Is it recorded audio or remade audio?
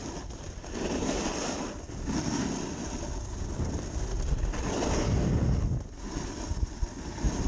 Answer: recorded